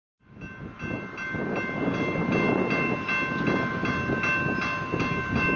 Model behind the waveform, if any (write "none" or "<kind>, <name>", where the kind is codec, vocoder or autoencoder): none